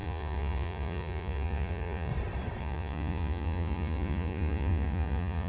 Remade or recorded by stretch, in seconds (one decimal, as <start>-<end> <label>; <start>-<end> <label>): 0.0-2.1 remade; 2.1-2.6 recorded; 2.6-5.5 remade